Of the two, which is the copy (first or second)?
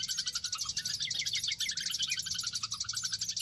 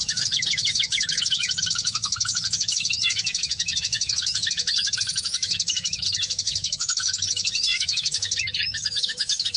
second